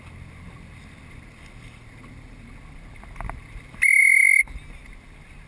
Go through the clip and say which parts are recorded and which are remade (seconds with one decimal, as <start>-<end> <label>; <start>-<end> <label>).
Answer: 0.0-5.5 recorded